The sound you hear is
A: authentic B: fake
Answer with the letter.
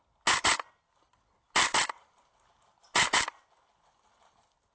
A